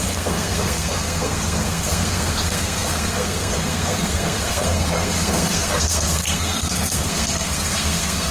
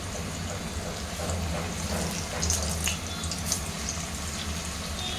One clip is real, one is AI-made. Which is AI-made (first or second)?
first